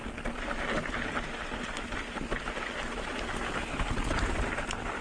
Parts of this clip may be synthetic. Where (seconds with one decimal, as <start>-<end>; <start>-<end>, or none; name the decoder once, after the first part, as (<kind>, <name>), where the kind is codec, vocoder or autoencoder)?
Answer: none